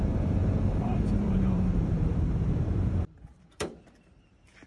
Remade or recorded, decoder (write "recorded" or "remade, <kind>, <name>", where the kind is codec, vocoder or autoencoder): remade, vocoder, BigVGAN v2